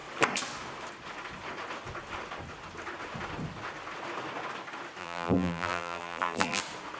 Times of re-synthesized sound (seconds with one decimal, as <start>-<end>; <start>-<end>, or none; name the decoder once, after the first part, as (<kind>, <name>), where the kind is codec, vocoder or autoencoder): 5.0-6.6 (vocoder, BigVGAN v2)